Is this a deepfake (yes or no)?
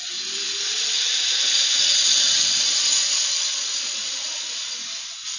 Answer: no